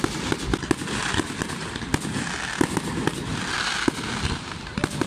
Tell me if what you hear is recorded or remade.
recorded